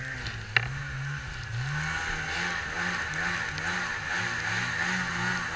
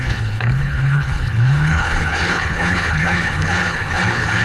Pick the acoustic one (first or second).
first